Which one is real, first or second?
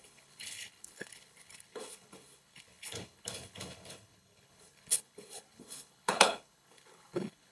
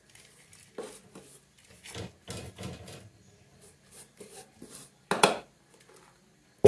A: second